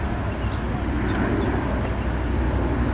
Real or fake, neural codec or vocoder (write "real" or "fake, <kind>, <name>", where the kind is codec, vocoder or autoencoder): real